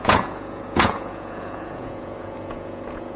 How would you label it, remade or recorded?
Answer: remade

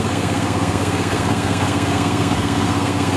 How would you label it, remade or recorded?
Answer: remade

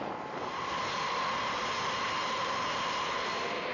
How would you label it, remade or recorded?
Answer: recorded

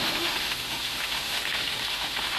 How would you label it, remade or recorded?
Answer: remade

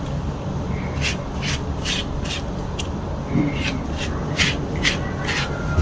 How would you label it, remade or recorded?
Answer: recorded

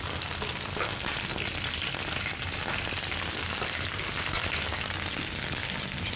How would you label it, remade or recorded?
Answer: recorded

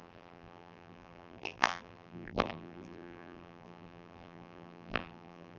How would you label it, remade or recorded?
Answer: remade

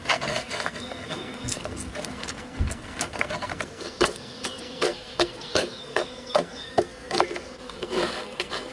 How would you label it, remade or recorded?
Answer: remade